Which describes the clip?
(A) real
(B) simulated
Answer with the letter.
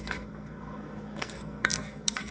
B